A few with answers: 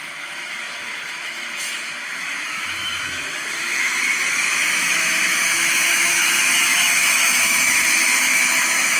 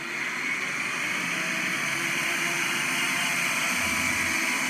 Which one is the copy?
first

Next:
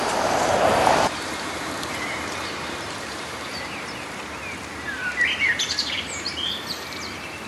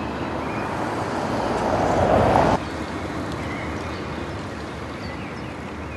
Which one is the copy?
first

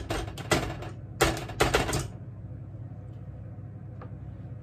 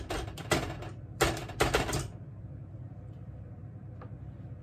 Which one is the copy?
second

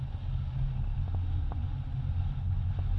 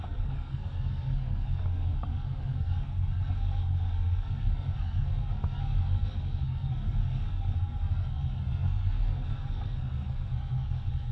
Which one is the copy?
second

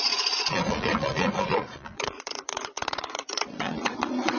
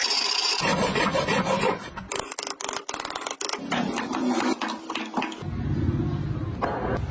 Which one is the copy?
first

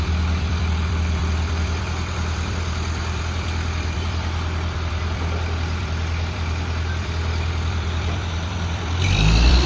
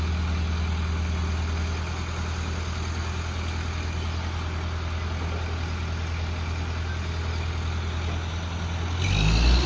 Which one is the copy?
first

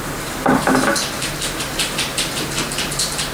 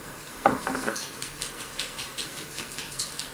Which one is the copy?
second